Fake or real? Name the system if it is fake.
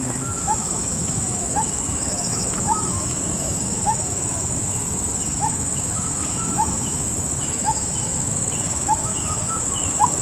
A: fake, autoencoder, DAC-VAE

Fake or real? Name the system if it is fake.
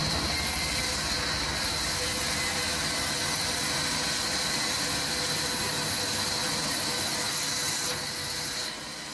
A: real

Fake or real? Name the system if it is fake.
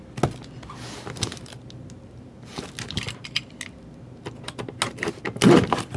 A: real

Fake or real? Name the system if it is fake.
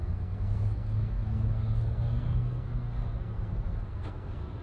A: fake, codec, SNAC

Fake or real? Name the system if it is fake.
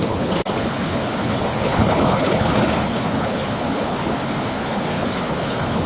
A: fake, codec, HILCodec